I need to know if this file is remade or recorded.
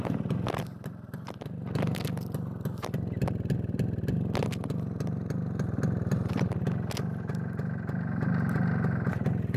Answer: recorded